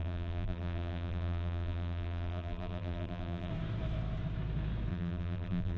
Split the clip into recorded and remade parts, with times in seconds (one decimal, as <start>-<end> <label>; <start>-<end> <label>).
0.0-3.5 remade; 3.5-4.9 recorded; 4.9-5.8 remade